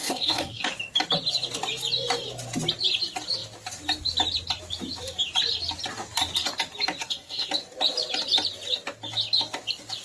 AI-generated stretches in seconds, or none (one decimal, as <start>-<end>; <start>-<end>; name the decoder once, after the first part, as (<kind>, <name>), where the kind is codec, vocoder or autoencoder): 0.0-0.6 (codec, SNAC); 7.0-7.5